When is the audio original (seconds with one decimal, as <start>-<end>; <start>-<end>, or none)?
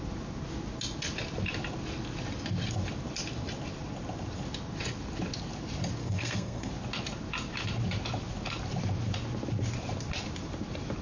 0.0-6.0; 6.7-11.0